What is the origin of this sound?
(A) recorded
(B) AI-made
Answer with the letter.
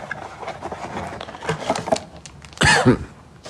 A